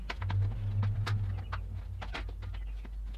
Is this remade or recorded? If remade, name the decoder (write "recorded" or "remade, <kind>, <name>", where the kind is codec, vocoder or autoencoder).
recorded